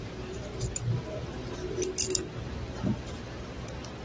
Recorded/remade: remade